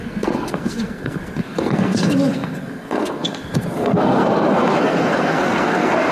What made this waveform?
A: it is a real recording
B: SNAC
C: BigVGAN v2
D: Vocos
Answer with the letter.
B